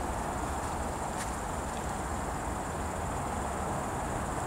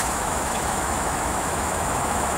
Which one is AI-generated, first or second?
second